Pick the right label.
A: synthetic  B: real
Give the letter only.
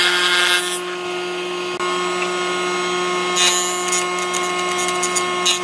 B